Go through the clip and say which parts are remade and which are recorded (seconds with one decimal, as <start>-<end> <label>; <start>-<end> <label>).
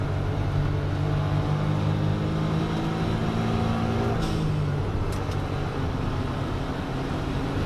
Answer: 0.0-7.7 recorded